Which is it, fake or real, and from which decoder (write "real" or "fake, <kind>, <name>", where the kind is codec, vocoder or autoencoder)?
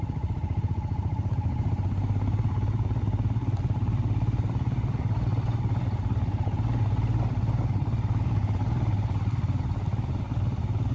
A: fake, vocoder, BigVGAN v2